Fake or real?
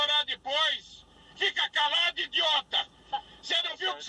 real